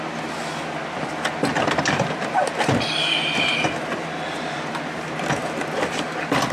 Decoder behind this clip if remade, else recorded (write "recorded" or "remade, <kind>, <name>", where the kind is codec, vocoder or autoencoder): recorded